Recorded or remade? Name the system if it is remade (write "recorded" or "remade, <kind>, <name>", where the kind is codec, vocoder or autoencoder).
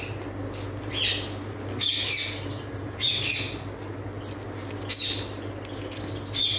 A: recorded